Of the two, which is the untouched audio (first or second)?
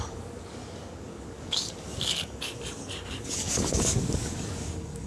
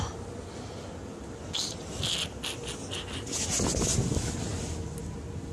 second